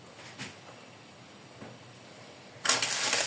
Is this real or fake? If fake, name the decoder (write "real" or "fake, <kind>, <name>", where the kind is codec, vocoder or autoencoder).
real